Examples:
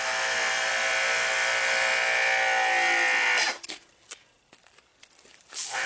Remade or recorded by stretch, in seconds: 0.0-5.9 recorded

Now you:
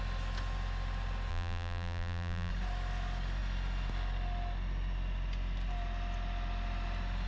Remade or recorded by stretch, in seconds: 0.0-1.3 recorded; 1.3-2.5 remade; 2.5-7.3 recorded

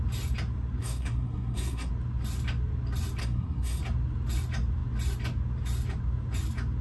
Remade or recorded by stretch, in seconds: 0.0-0.8 recorded; 0.8-1.9 remade; 1.9-3.2 recorded; 3.2-3.8 remade; 3.8-6.8 recorded

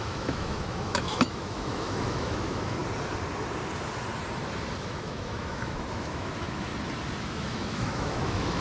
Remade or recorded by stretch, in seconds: 0.0-2.8 remade; 2.8-4.8 recorded; 4.8-6.7 remade; 6.7-7.2 recorded; 7.2-8.6 remade

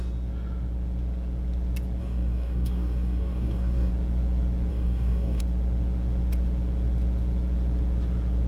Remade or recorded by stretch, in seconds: 0.0-2.0 recorded; 2.0-3.9 remade; 3.9-4.7 recorded; 4.7-5.4 remade; 5.4-8.5 recorded

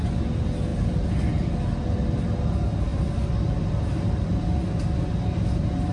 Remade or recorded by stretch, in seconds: 0.0-0.7 recorded; 0.7-1.5 remade; 1.5-5.9 recorded

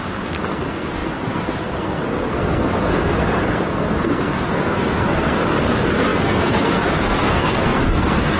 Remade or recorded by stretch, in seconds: 0.0-8.4 remade

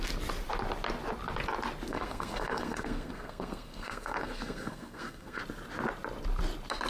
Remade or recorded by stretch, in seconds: 0.0-1.9 recorded; 1.9-5.4 remade; 5.4-6.9 recorded